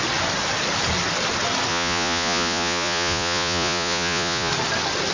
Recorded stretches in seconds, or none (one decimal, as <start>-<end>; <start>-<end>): 0.0-1.7; 4.5-5.1